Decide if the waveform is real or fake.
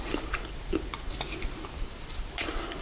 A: fake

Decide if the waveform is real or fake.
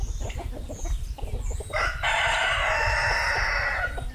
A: real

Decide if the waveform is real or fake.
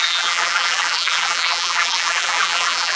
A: fake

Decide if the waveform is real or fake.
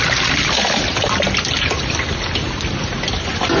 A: real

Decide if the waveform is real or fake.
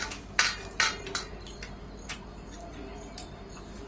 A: real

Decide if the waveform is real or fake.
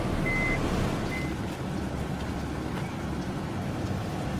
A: real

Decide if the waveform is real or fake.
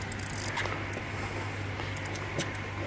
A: fake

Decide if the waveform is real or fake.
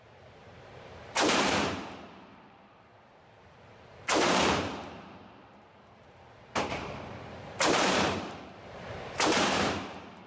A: fake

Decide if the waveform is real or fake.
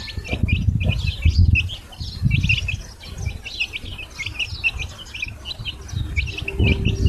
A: real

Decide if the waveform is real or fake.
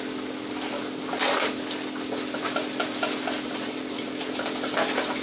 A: real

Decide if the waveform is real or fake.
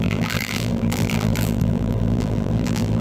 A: fake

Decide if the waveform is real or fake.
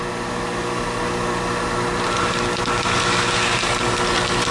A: real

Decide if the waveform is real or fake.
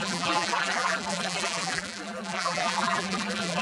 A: fake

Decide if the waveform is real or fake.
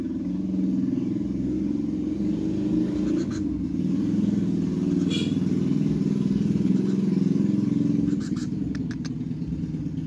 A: real